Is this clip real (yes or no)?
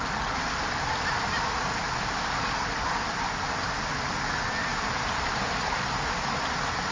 yes